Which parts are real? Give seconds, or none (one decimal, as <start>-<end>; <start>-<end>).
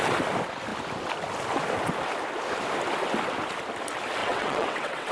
0.0-4.2